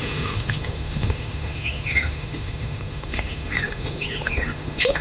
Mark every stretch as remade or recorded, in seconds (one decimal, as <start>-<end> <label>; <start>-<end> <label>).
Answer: 0.0-5.0 remade